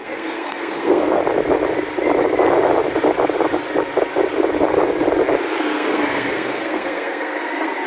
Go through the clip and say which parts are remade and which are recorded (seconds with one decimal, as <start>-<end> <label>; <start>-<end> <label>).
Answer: 0.0-1.2 remade; 1.2-5.6 recorded; 5.6-7.9 remade